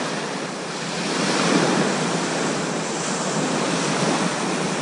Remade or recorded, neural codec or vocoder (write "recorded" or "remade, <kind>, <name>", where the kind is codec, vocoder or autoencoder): recorded